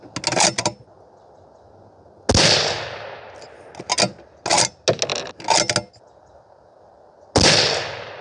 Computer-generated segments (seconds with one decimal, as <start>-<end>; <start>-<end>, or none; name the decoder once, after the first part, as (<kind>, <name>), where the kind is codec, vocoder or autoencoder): none

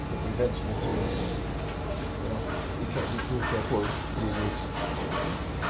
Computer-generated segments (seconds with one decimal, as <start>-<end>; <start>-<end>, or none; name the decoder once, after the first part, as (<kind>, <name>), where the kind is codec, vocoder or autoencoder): none